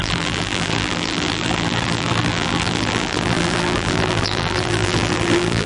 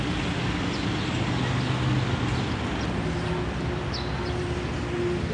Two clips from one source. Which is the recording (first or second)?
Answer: second